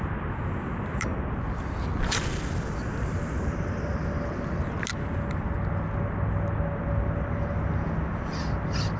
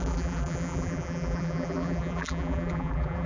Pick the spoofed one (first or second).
second